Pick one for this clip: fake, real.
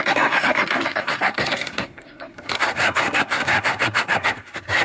fake